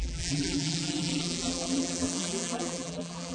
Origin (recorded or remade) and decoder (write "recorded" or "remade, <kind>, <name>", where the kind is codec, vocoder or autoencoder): remade, vocoder, BigVGAN v2